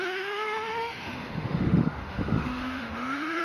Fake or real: fake